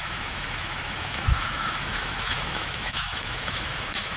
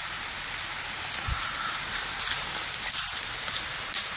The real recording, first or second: second